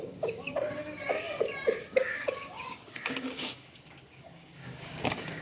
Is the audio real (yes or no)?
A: no